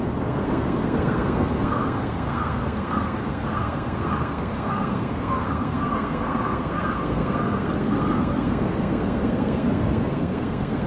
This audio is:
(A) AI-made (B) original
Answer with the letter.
A